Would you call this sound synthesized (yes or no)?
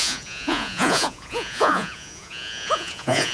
yes